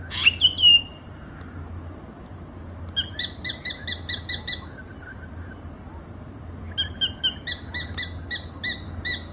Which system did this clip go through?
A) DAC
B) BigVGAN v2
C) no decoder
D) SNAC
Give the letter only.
C